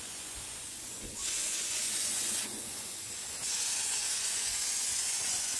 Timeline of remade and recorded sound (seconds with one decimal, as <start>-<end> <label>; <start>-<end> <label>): 0.0-5.6 remade